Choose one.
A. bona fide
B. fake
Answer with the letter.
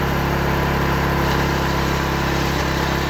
B